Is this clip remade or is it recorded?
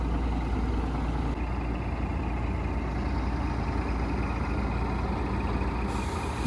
recorded